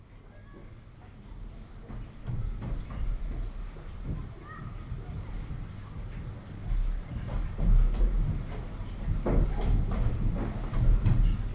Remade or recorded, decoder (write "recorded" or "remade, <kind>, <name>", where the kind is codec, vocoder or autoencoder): recorded